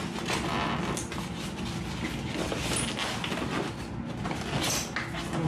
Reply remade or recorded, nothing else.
recorded